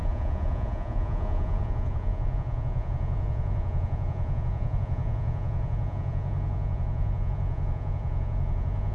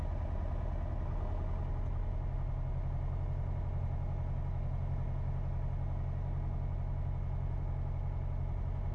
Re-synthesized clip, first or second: first